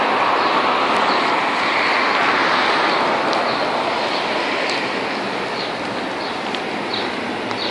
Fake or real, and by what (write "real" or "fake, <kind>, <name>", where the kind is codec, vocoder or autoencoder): real